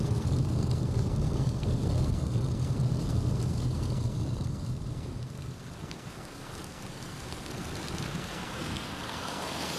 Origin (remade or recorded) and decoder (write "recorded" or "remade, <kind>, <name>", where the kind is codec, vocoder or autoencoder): remade, codec, SNAC